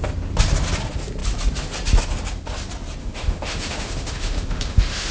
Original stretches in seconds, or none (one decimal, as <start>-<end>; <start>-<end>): 0.0-3.0